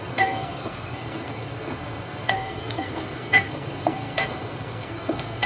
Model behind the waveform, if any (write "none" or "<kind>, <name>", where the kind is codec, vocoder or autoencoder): codec, SNAC